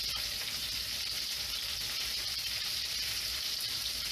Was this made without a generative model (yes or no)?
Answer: no